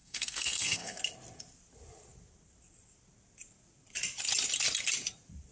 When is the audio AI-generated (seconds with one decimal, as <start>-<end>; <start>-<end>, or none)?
0.0-1.0